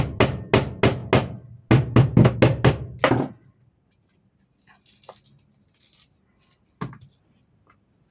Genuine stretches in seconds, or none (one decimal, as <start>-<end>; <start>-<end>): 0.0-8.1